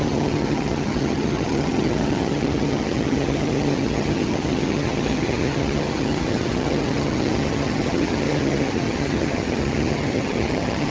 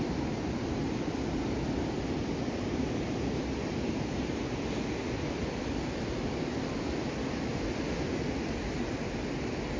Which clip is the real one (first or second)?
second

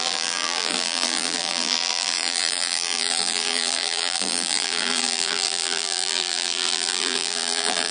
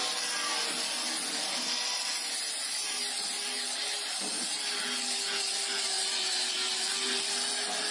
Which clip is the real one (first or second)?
second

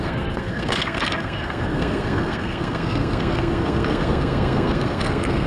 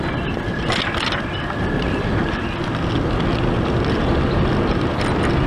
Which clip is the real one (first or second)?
second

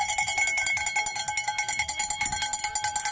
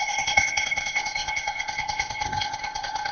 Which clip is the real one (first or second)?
first